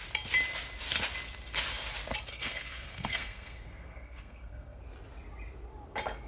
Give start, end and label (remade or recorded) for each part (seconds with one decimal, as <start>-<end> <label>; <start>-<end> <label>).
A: 0.0-2.3 recorded; 2.3-4.8 remade; 4.8-6.3 recorded